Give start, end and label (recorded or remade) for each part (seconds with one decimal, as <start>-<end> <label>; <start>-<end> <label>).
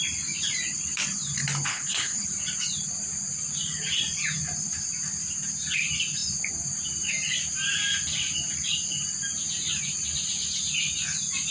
0.0-1.7 recorded; 1.7-2.3 remade; 2.3-11.5 recorded